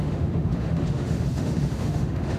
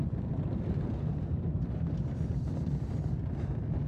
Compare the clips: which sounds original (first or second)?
second